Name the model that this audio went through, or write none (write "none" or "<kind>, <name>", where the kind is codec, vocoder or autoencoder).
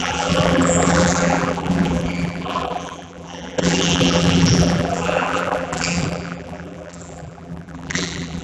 vocoder, BigVGAN v2